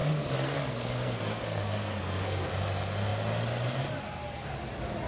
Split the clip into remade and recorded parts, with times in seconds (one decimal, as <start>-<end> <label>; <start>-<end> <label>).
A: 0.0-2.5 remade; 2.5-5.1 recorded